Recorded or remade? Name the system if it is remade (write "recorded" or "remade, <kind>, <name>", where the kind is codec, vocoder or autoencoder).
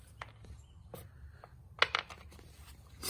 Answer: recorded